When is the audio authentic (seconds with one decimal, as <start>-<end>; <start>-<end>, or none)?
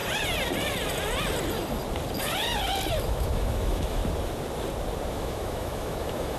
0.0-2.9; 4.0-5.1